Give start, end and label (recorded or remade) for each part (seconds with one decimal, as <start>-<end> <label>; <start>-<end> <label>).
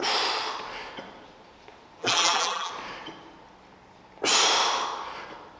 0.0-2.0 recorded; 2.0-2.7 remade; 2.7-5.6 recorded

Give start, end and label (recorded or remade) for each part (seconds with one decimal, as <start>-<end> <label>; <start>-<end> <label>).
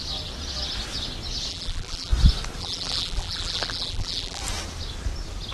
0.0-1.5 recorded; 1.5-2.1 remade; 2.1-2.6 recorded; 2.6-4.4 remade; 4.4-5.5 recorded